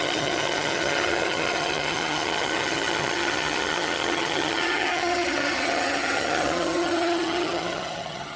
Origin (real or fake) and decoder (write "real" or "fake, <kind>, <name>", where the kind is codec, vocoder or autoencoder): fake, vocoder, HiFi-GAN